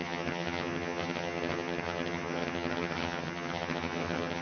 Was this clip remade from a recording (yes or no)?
yes